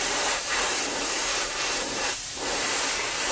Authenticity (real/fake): fake